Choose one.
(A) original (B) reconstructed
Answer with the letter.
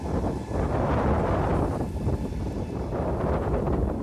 A